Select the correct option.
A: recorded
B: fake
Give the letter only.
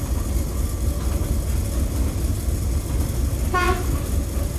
A